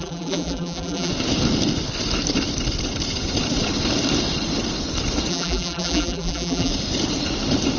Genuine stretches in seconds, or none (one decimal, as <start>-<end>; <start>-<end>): 1.1-5.3; 6.7-7.8